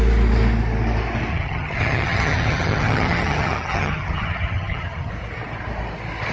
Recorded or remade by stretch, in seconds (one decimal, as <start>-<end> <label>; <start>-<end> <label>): 0.0-1.3 recorded; 1.3-5.1 remade; 5.1-6.3 recorded